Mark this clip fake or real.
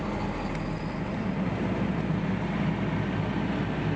real